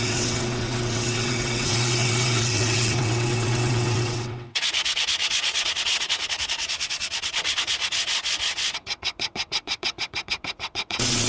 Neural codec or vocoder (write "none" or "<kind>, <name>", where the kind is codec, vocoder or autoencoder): vocoder, WaveNeXt